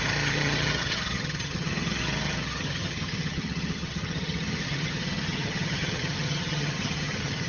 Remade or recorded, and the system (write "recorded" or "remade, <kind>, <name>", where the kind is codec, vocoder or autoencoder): remade, vocoder, HiFi-GAN